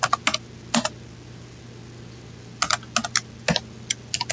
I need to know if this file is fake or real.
real